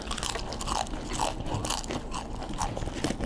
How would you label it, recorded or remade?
recorded